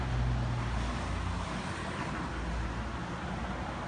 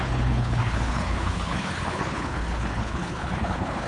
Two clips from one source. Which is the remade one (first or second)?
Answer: second